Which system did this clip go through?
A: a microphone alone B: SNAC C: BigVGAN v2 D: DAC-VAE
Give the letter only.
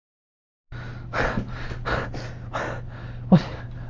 A